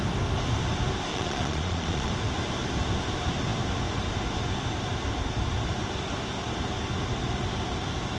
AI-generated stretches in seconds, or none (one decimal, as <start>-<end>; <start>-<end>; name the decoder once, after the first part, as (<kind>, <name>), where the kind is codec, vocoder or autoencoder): 1.1-2.1 (vocoder, Vocos)